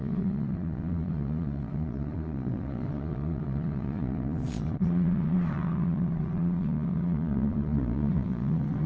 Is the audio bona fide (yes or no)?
no